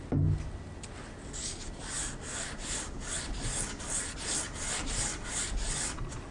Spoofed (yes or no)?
no